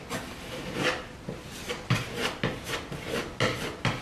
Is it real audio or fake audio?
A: real